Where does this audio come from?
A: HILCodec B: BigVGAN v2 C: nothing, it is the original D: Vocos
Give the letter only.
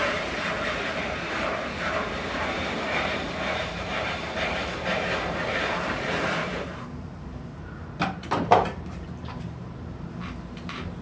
B